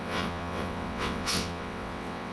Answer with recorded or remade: remade